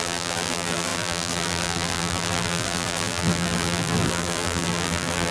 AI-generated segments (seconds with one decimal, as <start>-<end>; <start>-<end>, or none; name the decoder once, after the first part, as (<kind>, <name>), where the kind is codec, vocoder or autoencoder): 0.0-5.3 (vocoder, BigVGAN v2)